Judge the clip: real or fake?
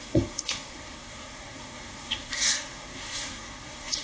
fake